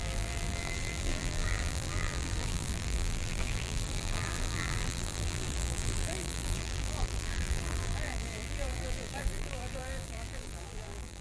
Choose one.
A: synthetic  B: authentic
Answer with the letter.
A